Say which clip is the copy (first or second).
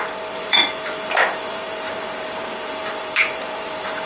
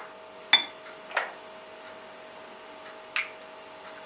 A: first